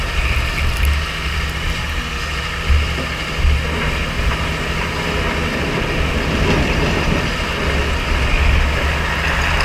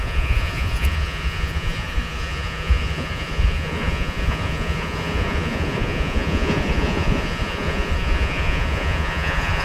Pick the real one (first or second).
first